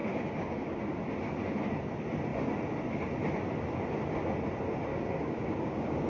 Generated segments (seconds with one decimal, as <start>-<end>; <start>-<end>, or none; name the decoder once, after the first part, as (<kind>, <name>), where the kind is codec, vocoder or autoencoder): 0.0-0.8 (codec, DAC); 4.9-6.1